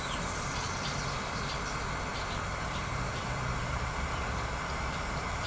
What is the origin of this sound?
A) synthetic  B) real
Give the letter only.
A